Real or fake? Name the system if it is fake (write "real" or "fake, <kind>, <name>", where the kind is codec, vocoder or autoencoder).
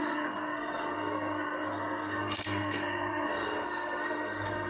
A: fake, codec, SNAC